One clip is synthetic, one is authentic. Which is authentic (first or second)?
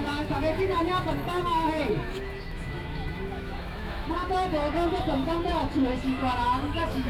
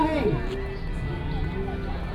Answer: second